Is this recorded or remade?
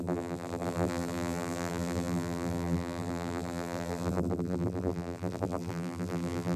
remade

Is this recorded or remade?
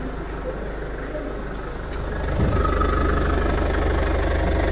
recorded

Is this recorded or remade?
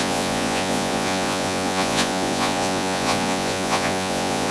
remade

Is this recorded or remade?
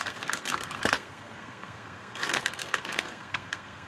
remade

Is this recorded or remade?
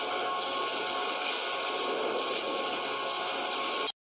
recorded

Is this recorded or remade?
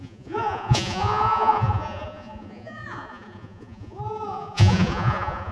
remade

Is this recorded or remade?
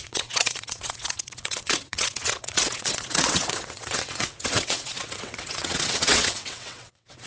remade